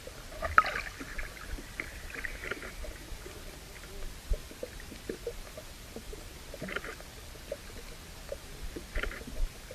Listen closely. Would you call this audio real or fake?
real